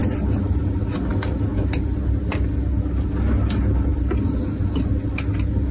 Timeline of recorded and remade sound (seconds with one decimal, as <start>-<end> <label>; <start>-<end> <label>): 0.0-5.7 recorded